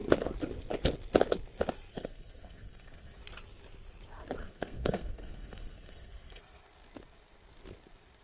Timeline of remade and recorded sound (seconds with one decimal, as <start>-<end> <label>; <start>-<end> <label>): 0.0-1.9 recorded; 1.9-3.2 remade; 3.2-4.4 recorded; 4.4-6.4 remade; 6.4-8.2 recorded